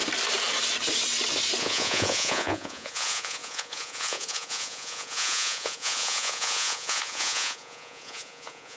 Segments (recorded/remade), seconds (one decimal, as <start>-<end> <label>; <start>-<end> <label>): 0.0-1.6 recorded; 1.6-8.8 remade